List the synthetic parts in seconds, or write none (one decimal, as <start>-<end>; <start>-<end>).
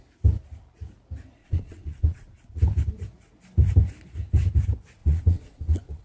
1.4-2.6; 5.0-6.0